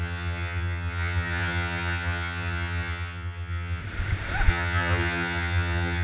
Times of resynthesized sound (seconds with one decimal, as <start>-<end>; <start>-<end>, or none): 0.0-3.8; 4.5-6.0